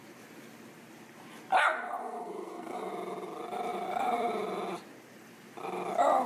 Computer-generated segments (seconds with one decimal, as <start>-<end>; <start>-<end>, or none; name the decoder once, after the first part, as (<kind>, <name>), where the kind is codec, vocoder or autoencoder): 2.0-2.9 (codec, SNAC)

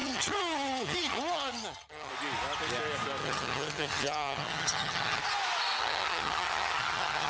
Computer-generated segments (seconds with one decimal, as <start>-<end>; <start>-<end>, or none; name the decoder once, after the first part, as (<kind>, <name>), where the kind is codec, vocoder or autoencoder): 0.0-2.1 (vocoder, HiFi-GAN); 3.2-5.2; 5.8-7.3